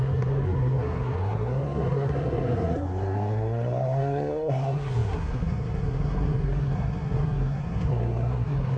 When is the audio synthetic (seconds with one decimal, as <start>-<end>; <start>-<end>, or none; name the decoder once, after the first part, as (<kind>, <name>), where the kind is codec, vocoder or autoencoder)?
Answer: 0.0-8.8 (codec, SNAC)